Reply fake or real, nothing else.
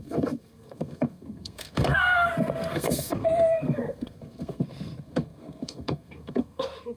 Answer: fake